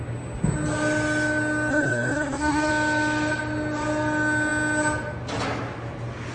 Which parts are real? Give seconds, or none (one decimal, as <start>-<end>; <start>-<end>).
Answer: 0.0-1.7; 2.7-6.3